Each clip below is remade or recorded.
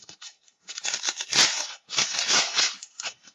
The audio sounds remade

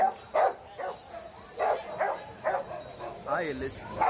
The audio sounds recorded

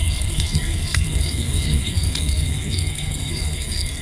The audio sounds remade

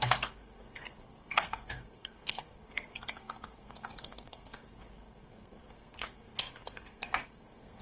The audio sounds remade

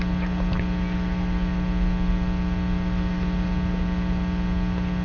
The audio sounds recorded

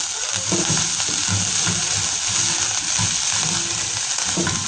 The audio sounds recorded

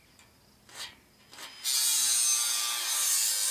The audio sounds recorded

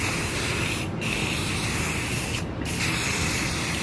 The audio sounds recorded